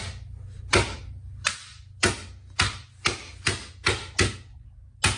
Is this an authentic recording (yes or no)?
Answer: yes